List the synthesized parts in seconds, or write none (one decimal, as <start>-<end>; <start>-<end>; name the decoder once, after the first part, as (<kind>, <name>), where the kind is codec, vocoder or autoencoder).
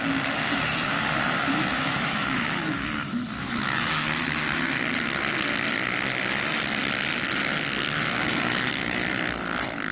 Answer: 1.7-3.9 (autoencoder, DAC-VAE)